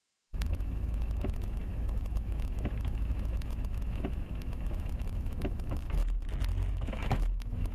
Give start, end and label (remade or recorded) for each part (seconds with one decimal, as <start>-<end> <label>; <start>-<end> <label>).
0.0-6.0 remade; 6.0-6.7 recorded; 6.7-7.7 remade